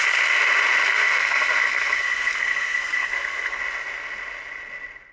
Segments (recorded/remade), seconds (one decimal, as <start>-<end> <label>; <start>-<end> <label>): 0.0-0.7 recorded; 0.7-3.6 remade; 3.6-5.1 recorded